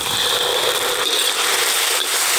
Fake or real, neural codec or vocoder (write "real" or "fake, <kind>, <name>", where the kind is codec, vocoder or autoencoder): real